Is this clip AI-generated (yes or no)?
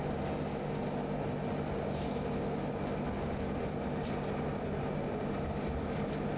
no